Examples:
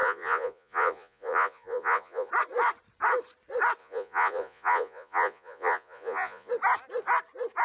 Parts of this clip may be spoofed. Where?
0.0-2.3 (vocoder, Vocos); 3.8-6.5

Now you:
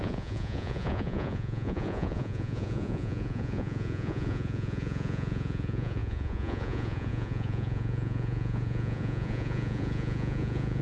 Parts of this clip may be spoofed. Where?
0.0-10.8 (vocoder, Vocos)